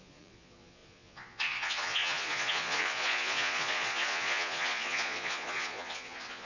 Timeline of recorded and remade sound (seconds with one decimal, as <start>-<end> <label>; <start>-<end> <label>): 0.0-6.5 remade